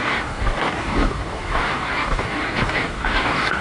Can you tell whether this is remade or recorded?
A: remade